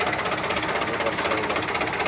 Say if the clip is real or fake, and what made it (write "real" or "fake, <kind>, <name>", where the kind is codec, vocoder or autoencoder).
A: real